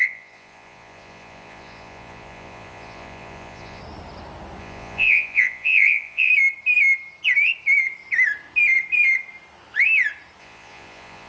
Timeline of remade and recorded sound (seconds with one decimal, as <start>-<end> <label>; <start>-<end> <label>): 0.0-3.8 remade; 3.8-4.6 recorded; 4.6-6.3 remade; 6.3-10.4 recorded; 10.4-11.3 remade